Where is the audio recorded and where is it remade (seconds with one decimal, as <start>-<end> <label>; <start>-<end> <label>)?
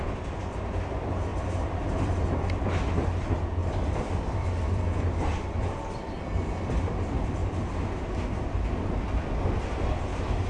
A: 0.0-1.3 recorded; 1.3-2.1 remade; 2.1-3.6 recorded; 3.6-6.2 remade; 6.2-10.5 recorded